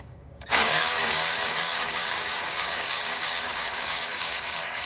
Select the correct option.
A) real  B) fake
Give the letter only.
B